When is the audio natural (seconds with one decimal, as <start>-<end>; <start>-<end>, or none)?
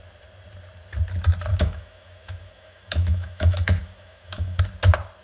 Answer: 0.0-1.5; 4.6-5.2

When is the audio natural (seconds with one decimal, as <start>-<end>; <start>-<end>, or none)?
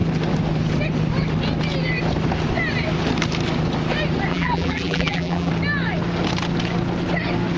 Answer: 0.0-4.3; 5.5-7.6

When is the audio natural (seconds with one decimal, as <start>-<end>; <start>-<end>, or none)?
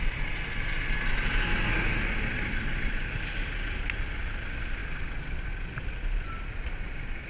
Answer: 0.0-7.3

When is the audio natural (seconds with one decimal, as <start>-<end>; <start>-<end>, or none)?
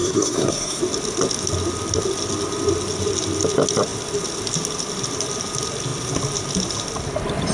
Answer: 0.8-7.5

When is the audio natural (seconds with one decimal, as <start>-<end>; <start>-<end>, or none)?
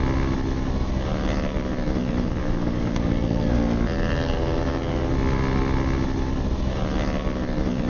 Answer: 0.0-2.4; 3.1-7.9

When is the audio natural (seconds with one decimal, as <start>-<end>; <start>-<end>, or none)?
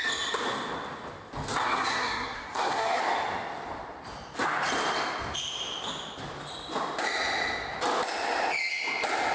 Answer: 0.0-1.6; 3.0-9.3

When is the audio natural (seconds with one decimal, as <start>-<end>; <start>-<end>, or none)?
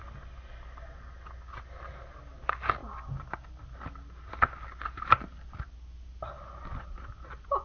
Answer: 0.0-7.6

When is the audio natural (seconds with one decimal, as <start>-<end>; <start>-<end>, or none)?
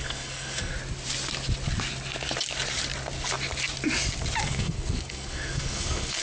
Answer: 0.7-4.4